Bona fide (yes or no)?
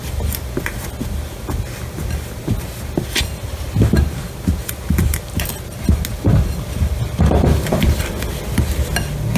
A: yes